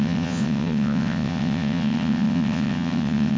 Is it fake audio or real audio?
fake